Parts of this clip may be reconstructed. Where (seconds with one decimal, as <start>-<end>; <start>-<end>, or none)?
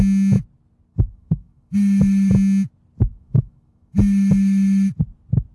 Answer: 0.9-2.3; 3.1-5.0